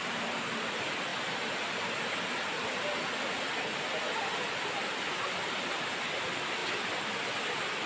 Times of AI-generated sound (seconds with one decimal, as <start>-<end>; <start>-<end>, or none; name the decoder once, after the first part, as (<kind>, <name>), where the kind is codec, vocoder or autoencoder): 0.0-1.1 (vocoder, BigVGAN v2); 5.8-6.6; 7.4-7.9